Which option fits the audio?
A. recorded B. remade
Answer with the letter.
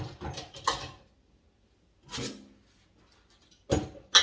A